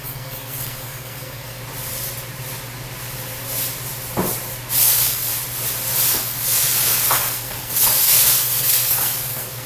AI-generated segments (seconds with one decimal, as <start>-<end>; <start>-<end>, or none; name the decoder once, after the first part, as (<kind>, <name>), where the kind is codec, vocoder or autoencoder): 0.0-1.6 (codec, SNAC); 4.8-5.3; 6.1-9.7